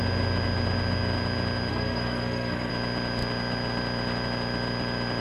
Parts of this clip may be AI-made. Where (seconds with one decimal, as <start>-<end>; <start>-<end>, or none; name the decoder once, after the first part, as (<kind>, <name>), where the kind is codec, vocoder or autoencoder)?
1.7-2.7 (codec, SNAC)